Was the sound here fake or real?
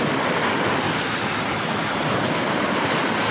real